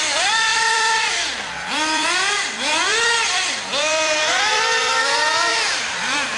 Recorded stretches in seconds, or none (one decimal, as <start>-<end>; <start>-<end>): none

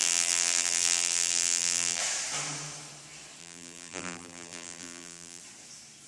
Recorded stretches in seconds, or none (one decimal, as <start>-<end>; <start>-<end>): 2.0-3.4; 5.4-6.1

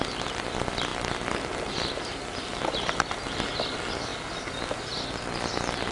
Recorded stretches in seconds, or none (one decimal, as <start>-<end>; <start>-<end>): none

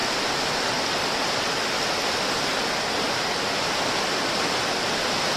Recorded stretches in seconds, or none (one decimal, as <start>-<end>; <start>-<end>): 0.0-5.4

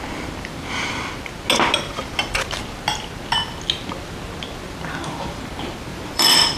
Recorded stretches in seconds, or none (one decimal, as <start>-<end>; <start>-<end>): 0.0-5.9

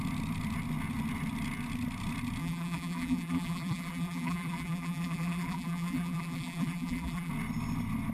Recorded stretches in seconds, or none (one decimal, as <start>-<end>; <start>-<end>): 0.0-2.4; 7.3-8.1